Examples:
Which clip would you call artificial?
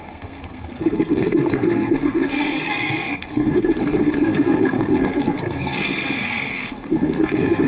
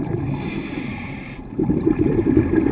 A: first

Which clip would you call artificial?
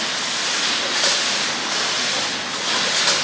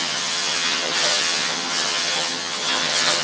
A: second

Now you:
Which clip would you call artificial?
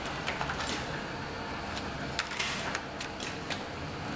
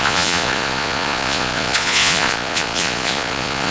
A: second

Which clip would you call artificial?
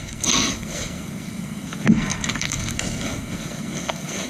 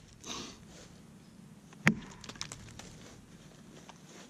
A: first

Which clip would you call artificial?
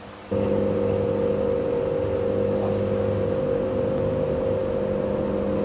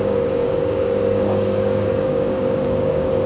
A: second